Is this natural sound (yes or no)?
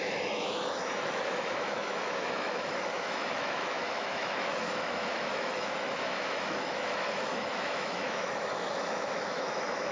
no